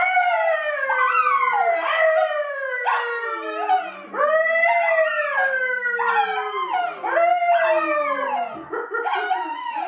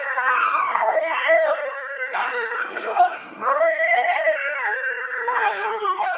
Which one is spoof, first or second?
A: second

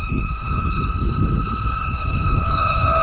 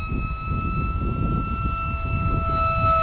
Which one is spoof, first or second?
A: first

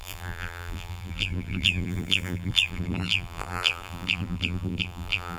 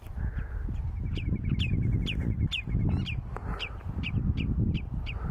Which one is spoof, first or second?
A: first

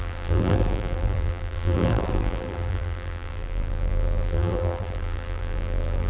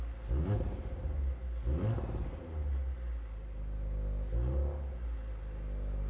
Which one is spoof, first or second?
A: first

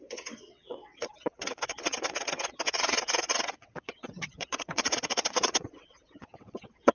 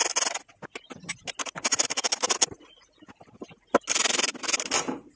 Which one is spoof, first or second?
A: first